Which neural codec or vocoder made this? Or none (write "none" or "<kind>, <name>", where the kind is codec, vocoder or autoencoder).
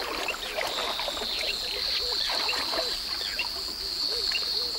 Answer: vocoder, BigVGAN v2